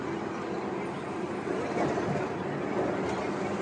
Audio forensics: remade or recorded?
recorded